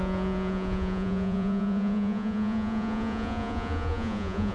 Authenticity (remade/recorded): remade